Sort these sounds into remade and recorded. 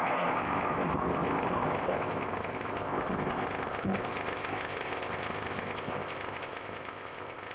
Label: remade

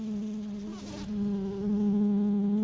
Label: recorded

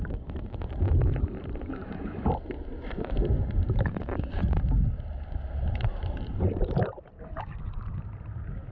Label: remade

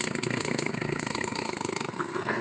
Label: remade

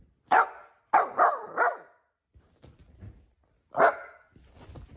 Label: recorded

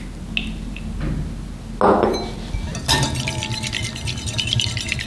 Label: recorded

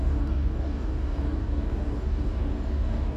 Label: remade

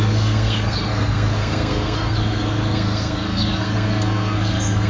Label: remade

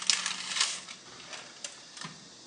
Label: recorded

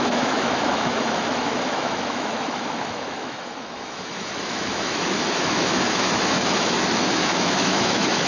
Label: remade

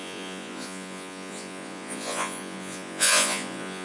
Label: remade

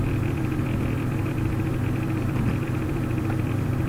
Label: remade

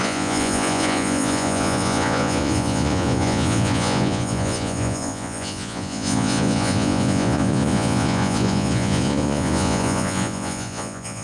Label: remade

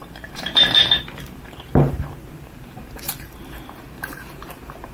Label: remade